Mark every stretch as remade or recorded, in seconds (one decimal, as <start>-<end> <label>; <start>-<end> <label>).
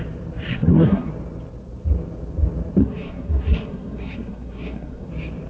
0.0-0.5 recorded; 0.5-1.1 remade; 1.1-2.8 recorded; 2.8-5.1 remade; 5.1-5.5 recorded